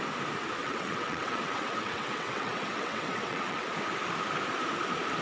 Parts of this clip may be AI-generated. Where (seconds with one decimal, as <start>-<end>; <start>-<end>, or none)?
0.6-3.7